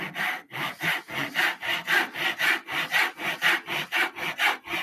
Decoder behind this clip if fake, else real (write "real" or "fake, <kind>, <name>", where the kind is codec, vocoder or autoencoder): real